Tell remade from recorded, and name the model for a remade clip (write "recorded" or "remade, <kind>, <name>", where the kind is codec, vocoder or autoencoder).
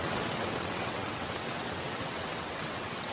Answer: remade, vocoder, WaveNeXt